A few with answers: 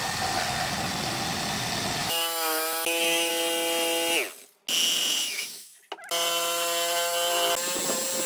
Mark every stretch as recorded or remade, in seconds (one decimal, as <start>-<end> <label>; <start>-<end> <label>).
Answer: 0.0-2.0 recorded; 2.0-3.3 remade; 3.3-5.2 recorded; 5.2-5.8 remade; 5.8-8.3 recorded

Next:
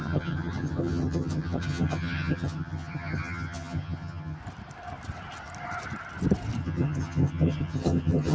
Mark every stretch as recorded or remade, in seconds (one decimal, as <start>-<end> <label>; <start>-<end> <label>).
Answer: 0.0-4.4 remade; 4.4-6.6 recorded; 6.6-8.3 remade

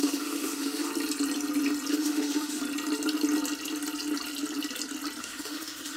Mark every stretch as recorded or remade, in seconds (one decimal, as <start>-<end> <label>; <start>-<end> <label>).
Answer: 0.0-0.9 remade; 0.9-1.9 recorded; 1.9-2.6 remade; 2.6-5.2 recorded; 5.2-6.0 remade

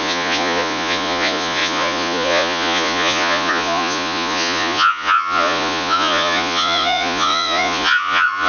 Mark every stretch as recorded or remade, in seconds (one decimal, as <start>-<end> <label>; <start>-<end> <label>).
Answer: 0.0-8.5 remade